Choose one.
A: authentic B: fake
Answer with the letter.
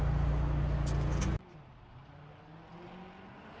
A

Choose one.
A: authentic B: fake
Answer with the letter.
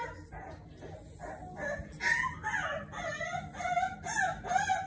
A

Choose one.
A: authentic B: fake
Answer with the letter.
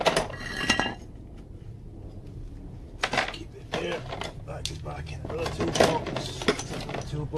A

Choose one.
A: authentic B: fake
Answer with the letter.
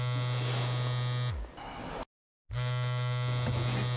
A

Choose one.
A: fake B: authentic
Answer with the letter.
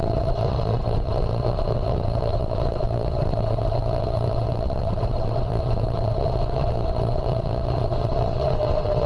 A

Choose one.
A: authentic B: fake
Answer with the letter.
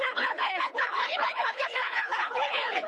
B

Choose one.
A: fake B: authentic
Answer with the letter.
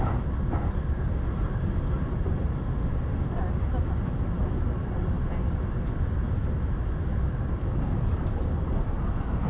B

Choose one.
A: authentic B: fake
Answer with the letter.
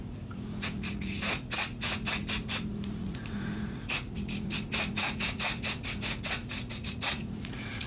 B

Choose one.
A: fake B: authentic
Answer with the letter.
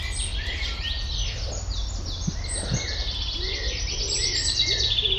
B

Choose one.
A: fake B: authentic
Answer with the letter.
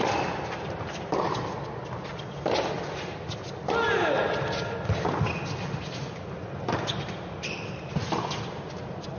B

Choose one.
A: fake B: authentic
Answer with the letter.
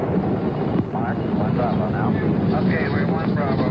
B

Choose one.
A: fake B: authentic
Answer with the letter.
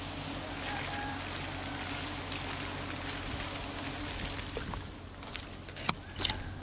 B